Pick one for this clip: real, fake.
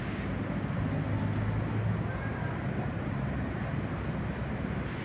real